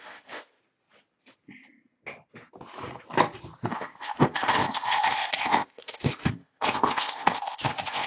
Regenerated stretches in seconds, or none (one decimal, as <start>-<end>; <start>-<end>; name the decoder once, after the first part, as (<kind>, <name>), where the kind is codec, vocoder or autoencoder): 0.0-0.6 (codec, ZipCodec); 3.7-8.1